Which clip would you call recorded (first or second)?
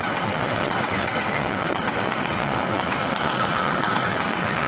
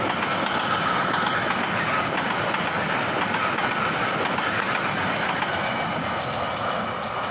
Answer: second